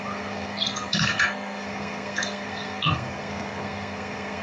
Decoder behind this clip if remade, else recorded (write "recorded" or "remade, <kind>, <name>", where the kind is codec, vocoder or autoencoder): remade, codec, SNAC